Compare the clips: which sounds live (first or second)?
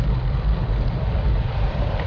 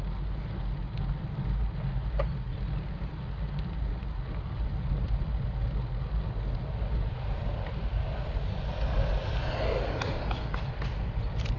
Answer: second